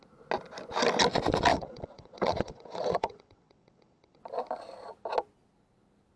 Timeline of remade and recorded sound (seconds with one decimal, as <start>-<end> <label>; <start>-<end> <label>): 0.0-1.5 recorded; 1.5-4.2 remade; 4.2-6.2 recorded